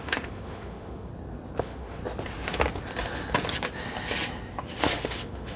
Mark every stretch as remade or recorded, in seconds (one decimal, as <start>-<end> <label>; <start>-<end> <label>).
0.0-1.1 remade; 1.1-1.6 recorded; 1.6-2.0 remade; 2.0-4.8 recorded; 4.8-5.6 remade

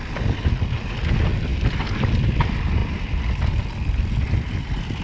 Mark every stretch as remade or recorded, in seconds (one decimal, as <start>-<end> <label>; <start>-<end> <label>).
0.0-5.0 recorded

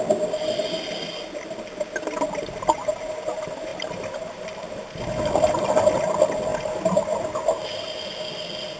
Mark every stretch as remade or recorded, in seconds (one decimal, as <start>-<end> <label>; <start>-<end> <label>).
0.0-3.7 recorded; 3.7-6.0 remade; 6.0-8.8 recorded

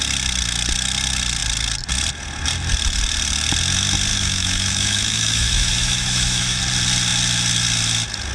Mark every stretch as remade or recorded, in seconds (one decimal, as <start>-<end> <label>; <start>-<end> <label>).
0.0-4.1 recorded; 4.1-6.6 remade; 6.6-8.3 recorded

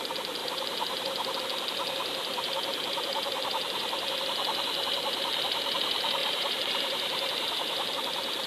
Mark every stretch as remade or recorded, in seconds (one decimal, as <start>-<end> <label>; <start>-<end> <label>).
0.0-0.4 recorded; 0.4-1.4 remade; 1.4-2.7 recorded; 2.7-4.2 remade; 4.2-6.2 recorded; 6.2-7.9 remade; 7.9-8.5 recorded

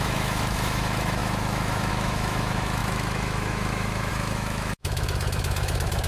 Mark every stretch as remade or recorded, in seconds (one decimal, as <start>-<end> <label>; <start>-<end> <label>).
0.0-6.1 remade